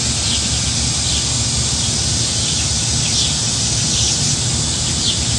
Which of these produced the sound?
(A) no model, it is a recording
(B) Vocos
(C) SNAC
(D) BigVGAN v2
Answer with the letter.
A